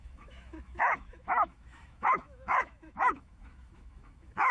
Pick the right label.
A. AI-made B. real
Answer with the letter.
A